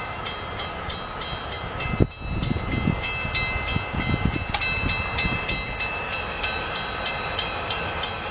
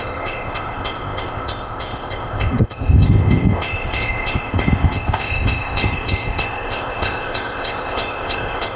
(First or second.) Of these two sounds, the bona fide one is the first